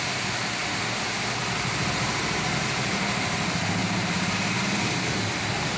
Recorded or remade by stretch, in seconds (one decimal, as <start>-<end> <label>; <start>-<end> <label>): 0.0-5.8 recorded